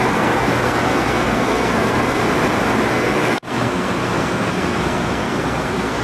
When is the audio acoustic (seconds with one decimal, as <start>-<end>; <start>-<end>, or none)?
2.2-2.9